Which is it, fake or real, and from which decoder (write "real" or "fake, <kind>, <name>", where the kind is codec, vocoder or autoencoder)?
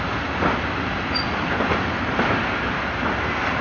real